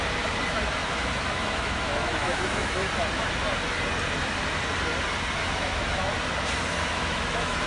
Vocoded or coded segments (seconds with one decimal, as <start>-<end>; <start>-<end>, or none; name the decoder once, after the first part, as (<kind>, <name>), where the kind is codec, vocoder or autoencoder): 0.8-2.9 (autoencoder, DAC-VAE); 5.4-6.2; 6.7-7.7